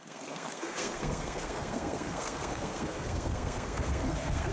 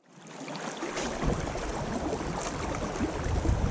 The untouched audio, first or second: second